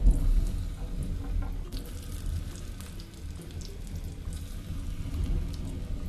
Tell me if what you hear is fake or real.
real